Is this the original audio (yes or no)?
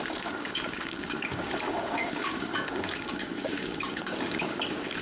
no